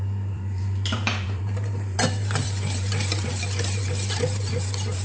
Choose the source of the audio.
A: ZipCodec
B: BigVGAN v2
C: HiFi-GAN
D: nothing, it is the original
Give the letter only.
B